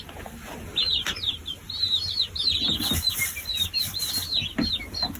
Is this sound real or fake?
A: real